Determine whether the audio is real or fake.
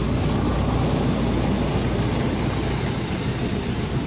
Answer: real